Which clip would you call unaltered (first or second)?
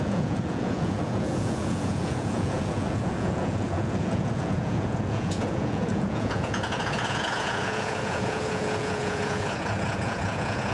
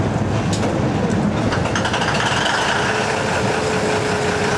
second